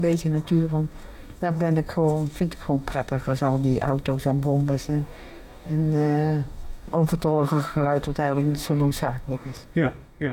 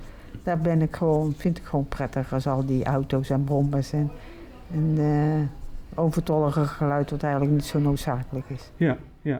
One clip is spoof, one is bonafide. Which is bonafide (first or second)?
second